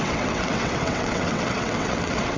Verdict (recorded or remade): remade